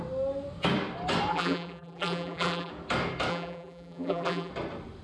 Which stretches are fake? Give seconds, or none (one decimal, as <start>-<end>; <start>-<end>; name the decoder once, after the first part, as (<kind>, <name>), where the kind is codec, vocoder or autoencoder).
1.3-2.7 (vocoder, BigVGAN v2); 3.3-4.5